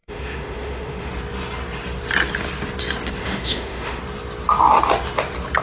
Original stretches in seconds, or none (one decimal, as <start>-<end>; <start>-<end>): 1.1-3.2; 4.0-5.6